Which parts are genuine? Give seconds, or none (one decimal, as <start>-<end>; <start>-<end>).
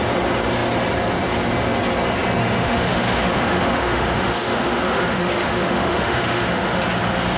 0.0-2.4; 6.8-7.4